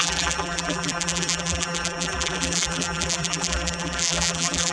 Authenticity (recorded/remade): remade